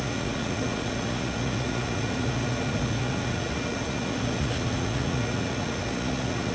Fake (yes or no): yes